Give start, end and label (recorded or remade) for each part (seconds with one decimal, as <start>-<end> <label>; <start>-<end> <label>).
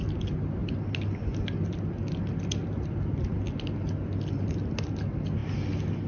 0.0-6.1 recorded